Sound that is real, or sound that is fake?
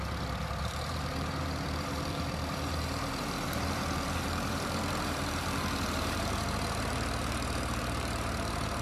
fake